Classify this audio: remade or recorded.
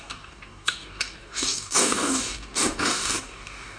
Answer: remade